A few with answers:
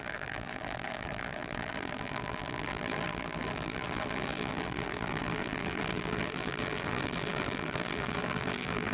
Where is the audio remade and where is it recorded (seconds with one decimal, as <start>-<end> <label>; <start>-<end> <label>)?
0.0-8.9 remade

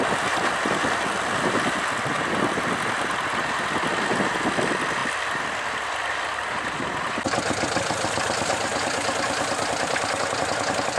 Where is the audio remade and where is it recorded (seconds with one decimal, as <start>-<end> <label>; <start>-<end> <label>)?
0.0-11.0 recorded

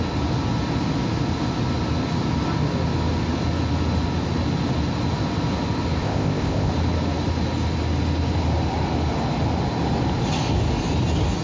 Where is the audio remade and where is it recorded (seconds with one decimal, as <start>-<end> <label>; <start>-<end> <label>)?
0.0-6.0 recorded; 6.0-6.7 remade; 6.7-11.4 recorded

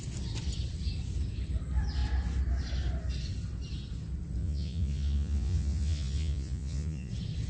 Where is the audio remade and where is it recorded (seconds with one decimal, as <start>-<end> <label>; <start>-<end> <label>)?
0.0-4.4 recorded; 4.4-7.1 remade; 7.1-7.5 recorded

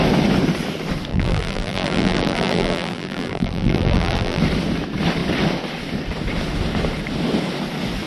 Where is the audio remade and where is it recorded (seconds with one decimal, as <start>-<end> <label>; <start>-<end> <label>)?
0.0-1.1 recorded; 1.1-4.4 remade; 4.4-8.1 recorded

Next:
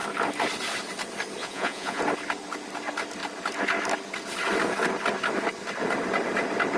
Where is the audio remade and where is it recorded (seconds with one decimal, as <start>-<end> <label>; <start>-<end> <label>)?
0.0-1.4 recorded; 1.4-2.0 remade; 2.0-6.8 recorded